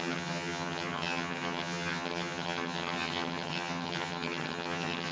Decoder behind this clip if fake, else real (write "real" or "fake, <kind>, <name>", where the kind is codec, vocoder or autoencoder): fake, vocoder, HiFi-GAN